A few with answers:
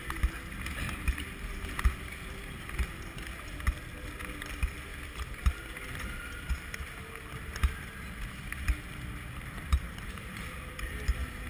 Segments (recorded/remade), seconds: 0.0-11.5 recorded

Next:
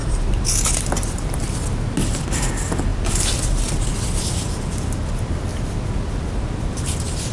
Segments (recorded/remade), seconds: 0.0-1.5 remade; 1.5-2.9 recorded; 2.9-4.2 remade; 4.2-5.5 recorded; 5.5-6.7 remade; 6.7-7.3 recorded

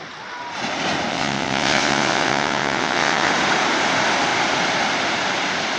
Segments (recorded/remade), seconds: 0.0-1.1 recorded; 1.1-3.3 remade; 3.3-5.8 recorded

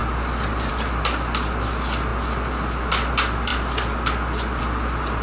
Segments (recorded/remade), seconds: 0.0-5.2 recorded